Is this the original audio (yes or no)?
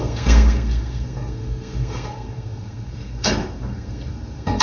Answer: no